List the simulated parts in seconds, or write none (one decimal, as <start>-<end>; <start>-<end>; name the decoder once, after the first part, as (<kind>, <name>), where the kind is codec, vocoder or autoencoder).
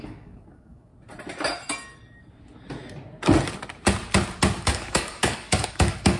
0.0-0.9 (codec, DAC); 4.6-6.2